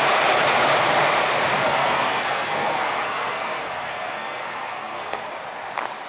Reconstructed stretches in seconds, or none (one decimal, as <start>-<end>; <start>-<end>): 1.6-5.3